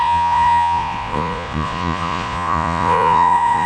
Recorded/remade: remade